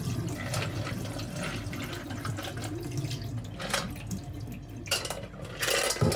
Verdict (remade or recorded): recorded